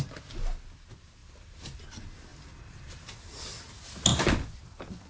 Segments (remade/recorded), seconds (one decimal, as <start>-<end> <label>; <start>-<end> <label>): 0.0-1.2 recorded; 1.2-1.8 remade; 1.8-2.3 recorded; 2.3-3.3 remade; 3.3-4.1 recorded; 4.1-5.1 remade